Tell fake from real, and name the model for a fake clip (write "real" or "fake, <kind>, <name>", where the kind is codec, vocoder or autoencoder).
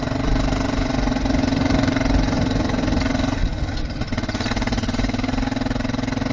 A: real